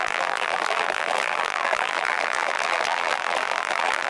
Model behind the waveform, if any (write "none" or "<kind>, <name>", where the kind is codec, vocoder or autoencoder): vocoder, BigVGAN v2